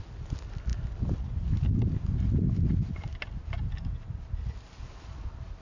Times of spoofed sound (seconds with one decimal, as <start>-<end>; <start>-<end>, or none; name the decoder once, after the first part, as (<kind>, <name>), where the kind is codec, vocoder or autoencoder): none